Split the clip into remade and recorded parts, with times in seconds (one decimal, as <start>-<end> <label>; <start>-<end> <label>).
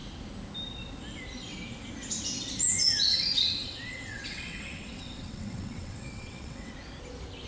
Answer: 0.0-3.1 recorded; 3.1-6.7 remade; 6.7-7.5 recorded